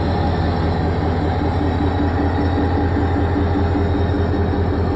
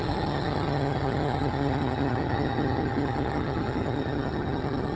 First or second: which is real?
first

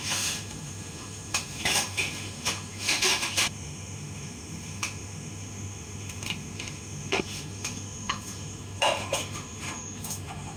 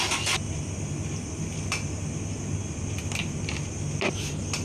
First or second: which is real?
second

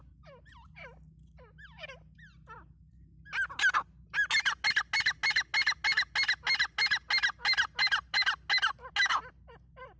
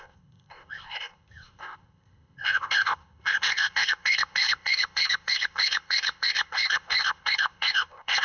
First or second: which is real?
first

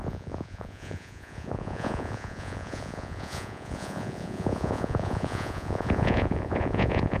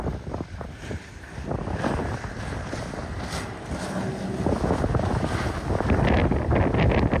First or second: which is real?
second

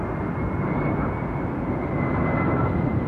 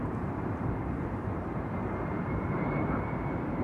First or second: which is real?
first